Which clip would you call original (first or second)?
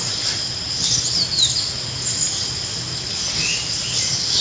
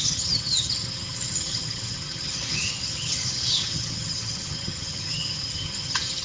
first